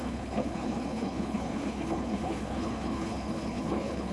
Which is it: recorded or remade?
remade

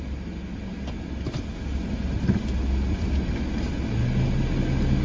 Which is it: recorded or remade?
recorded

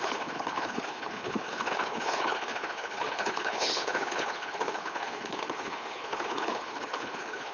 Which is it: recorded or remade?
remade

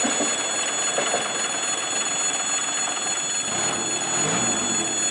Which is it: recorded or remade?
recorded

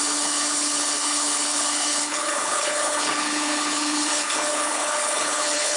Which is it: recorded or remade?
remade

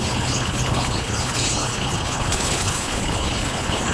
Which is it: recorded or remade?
remade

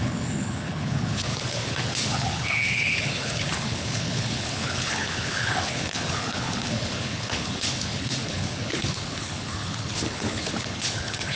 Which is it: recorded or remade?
remade